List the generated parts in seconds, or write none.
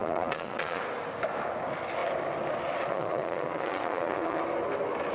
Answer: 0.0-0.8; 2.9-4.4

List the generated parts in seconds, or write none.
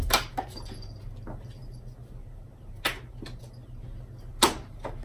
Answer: none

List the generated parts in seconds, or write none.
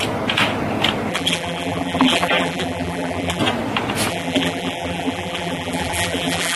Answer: 1.1-3.4; 4.1-6.6